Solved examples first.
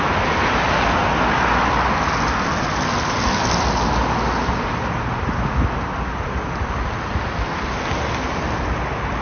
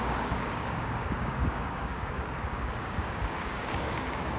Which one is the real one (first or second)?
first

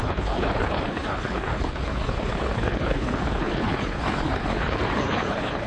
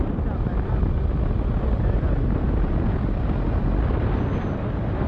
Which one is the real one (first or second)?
second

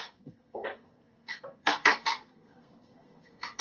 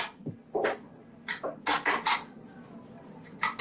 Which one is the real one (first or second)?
second